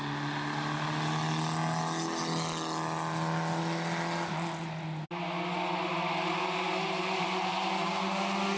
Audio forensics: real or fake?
real